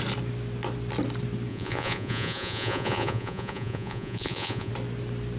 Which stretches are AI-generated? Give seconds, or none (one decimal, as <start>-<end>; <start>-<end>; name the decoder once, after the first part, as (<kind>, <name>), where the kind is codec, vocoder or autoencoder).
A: 1.5-4.7 (vocoder, Vocos)